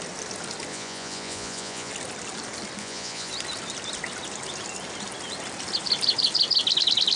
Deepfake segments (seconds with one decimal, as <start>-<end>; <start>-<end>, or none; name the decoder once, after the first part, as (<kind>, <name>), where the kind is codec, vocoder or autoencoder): 0.7-1.9 (vocoder, Vocos); 2.8-3.3